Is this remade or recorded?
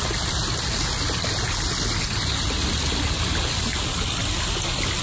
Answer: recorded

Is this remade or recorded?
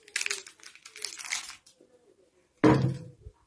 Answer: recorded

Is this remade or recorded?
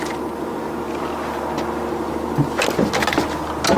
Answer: recorded